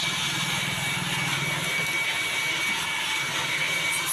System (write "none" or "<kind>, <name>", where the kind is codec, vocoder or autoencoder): none